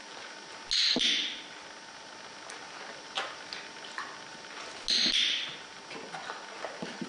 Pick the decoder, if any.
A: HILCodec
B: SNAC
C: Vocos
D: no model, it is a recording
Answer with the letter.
D